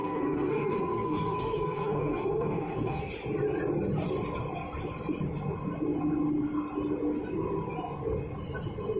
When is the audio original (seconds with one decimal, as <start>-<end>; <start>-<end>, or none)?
3.1-9.0